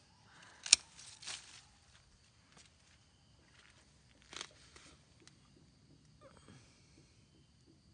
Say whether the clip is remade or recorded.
recorded